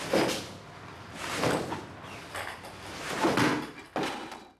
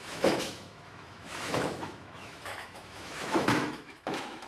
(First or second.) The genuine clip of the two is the first